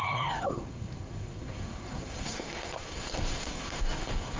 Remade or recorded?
remade